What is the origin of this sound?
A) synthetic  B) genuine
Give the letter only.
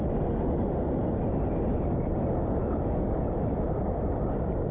B